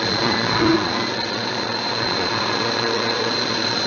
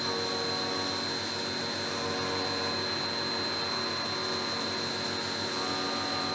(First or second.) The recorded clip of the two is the second